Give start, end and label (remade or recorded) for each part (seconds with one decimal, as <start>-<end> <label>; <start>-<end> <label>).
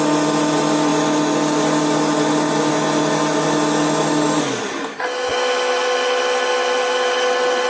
0.0-7.7 recorded